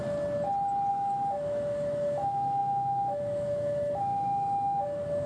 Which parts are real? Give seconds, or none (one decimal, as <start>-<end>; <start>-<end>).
0.0-0.9